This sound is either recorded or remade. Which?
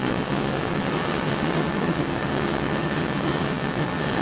remade